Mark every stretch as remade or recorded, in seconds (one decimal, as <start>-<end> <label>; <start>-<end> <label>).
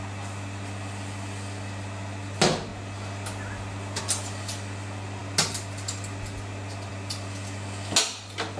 0.0-8.6 recorded